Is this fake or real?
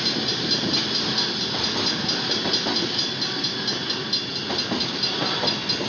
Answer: real